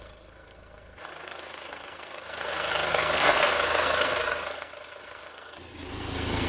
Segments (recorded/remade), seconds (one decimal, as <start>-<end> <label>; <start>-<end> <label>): 0.0-6.5 remade

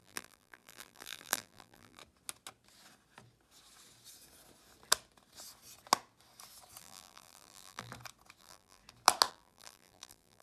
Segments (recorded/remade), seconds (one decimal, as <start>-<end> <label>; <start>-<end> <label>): 0.0-2.0 remade; 2.0-6.8 recorded; 6.8-7.9 remade; 7.9-8.4 recorded; 8.4-8.8 remade; 8.8-9.3 recorded; 9.3-10.4 remade

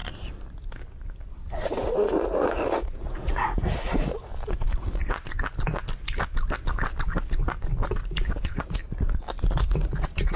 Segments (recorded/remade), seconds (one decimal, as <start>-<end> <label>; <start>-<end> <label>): 0.0-1.5 recorded; 1.5-4.3 remade; 4.3-8.4 recorded; 8.4-8.8 remade; 8.8-9.6 recorded; 9.6-10.4 remade

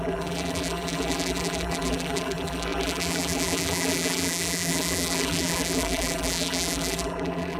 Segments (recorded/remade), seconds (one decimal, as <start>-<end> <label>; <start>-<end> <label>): 0.0-7.6 remade

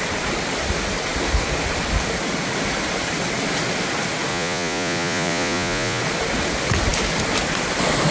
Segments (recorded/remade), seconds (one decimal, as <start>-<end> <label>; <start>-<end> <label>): 0.0-4.3 recorded; 4.3-6.0 remade; 6.0-8.1 recorded

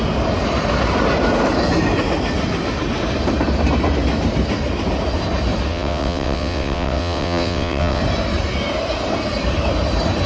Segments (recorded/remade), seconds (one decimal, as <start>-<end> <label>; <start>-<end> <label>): 0.0-5.7 recorded; 5.7-8.0 remade; 8.0-10.3 recorded